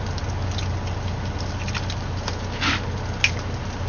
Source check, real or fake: real